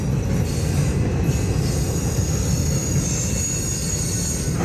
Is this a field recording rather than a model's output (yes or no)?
yes